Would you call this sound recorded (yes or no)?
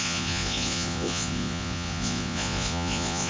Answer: no